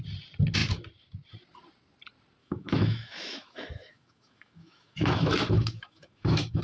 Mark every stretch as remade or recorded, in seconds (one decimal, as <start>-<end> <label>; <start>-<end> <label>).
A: 0.0-2.4 recorded; 2.4-6.6 remade